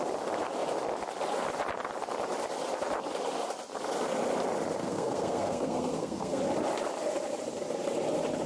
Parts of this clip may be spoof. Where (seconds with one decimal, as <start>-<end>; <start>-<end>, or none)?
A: 4.8-6.4